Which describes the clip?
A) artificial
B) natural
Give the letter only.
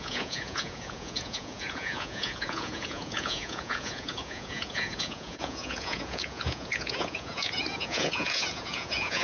A